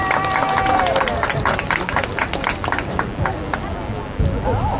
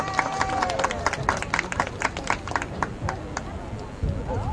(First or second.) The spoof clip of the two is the second